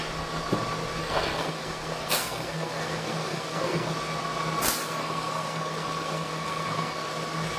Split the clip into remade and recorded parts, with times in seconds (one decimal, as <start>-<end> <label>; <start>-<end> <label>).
0.0-1.0 recorded; 1.0-3.9 remade; 3.9-4.8 recorded; 4.8-7.1 remade; 7.1-7.6 recorded